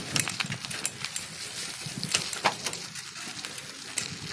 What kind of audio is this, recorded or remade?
recorded